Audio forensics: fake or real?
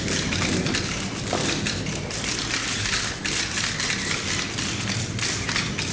real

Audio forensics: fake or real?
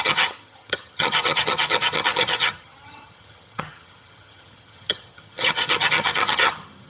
fake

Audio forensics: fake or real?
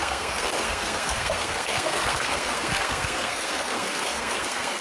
fake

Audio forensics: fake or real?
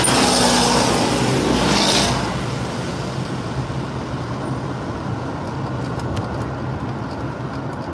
real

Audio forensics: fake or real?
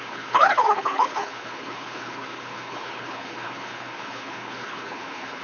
fake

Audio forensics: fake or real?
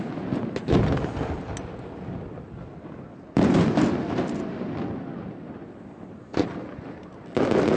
real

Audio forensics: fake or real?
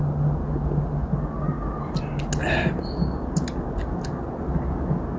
real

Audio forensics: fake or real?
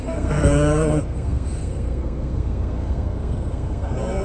fake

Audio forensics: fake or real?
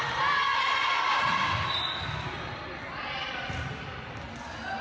real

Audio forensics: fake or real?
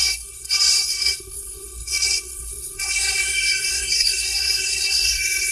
fake